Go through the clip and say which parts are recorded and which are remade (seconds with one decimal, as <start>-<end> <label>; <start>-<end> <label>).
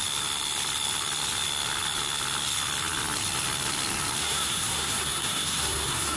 0.0-4.2 recorded; 4.2-6.2 remade